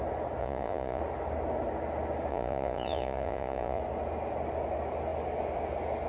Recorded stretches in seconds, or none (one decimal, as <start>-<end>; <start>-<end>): 0.0-0.4; 1.0-2.3; 3.8-6.1